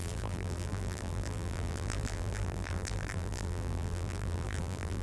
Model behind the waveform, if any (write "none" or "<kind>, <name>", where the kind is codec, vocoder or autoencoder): vocoder, BigVGAN v2